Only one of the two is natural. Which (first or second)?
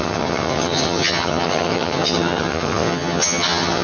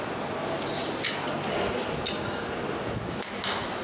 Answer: second